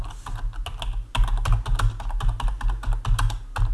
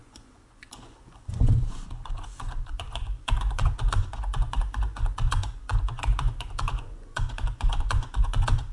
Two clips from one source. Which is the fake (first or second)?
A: second